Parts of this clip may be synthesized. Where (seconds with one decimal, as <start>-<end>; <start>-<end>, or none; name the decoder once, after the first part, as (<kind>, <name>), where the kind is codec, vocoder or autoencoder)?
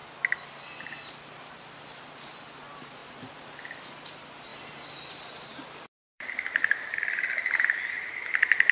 3.0-3.9 (vocoder, BigVGAN v2); 4.5-6.3